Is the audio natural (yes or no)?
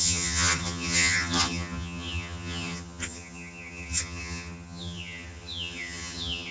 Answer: no